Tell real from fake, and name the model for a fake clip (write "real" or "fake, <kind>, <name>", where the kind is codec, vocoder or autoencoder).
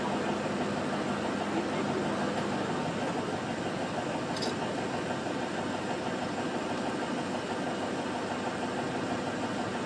real